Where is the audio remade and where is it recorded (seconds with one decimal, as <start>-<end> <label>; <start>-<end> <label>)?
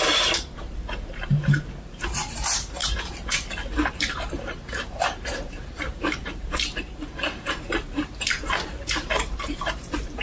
0.0-2.8 remade; 2.8-3.9 recorded; 3.9-10.2 remade